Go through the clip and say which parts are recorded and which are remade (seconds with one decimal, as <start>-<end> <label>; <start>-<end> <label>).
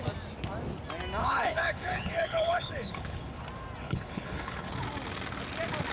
0.0-1.2 recorded; 1.2-3.4 remade; 3.4-3.8 recorded; 3.8-4.7 remade; 4.7-5.9 recorded